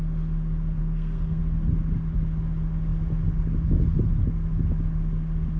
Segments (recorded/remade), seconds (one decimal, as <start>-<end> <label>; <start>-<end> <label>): 0.0-0.8 recorded; 0.8-1.4 remade; 1.4-5.6 recorded

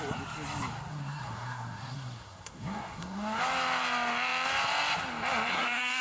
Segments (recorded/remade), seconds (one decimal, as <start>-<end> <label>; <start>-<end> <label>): 0.0-0.9 recorded; 0.9-3.4 remade; 3.4-5.5 recorded; 5.5-6.0 remade

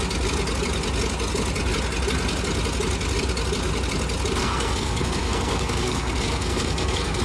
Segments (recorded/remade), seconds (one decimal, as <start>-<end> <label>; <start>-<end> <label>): 0.0-4.4 recorded; 4.4-7.2 remade

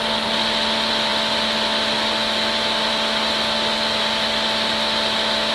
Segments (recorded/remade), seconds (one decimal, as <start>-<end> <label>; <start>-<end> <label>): 0.0-5.5 recorded

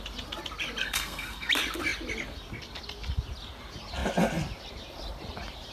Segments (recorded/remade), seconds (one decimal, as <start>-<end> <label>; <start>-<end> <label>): 0.0-0.8 recorded; 0.8-1.5 remade; 1.5-5.7 recorded

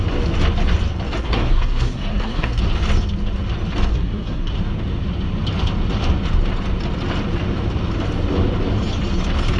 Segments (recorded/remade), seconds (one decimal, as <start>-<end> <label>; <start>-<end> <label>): 0.0-1.2 recorded; 1.2-2.6 remade; 2.6-3.9 recorded; 3.9-4.5 remade; 4.5-9.6 recorded